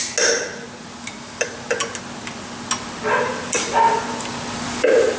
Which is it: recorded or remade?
recorded